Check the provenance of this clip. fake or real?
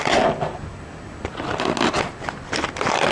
real